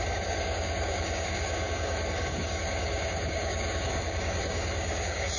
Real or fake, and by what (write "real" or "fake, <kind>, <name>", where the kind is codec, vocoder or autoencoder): fake, codec, DAC